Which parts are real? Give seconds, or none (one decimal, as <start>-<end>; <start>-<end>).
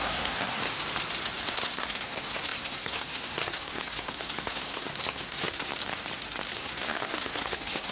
0.6-1.5; 5.7-6.5